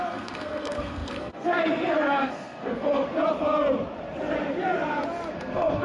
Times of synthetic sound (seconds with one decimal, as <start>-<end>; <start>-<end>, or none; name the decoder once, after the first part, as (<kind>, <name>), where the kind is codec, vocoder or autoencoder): 0.0-3.1 (codec, SNAC); 5.3-5.8